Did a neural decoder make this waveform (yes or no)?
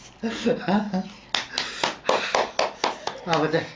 no